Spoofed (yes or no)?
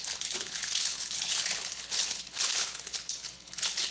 yes